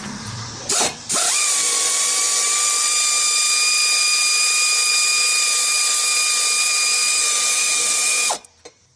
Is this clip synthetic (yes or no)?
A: yes